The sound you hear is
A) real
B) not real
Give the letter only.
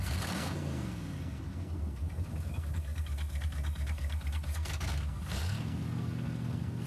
B